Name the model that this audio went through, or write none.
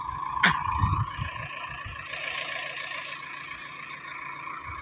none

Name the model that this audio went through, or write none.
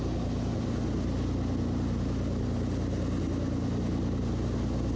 none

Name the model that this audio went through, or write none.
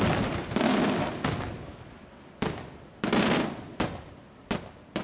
none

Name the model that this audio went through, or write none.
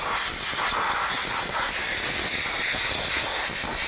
none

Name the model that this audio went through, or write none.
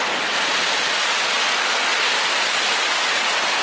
none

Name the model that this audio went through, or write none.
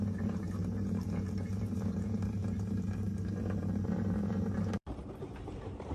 vocoder, BigVGAN v2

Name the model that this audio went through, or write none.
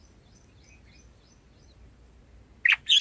none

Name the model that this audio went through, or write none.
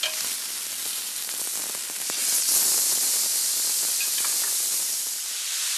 none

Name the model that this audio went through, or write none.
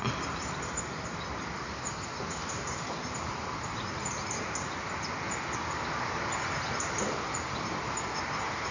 vocoder, BigVGAN v2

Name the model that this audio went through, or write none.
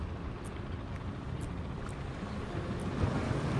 none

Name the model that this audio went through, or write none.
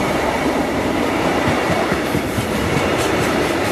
vocoder, BigVGAN v2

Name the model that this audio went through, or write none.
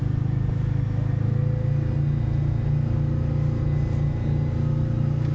none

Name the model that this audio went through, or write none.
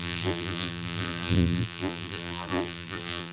vocoder, BigVGAN v2